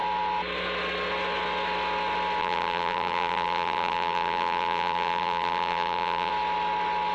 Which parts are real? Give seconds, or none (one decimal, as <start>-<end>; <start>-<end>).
0.0-2.4; 6.3-7.1